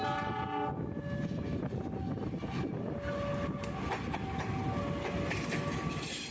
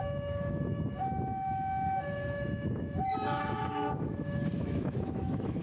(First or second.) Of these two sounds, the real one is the first